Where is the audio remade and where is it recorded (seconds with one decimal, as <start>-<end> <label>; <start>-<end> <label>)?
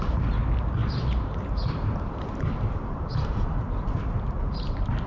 0.0-0.8 recorded; 0.8-3.9 remade; 3.9-5.1 recorded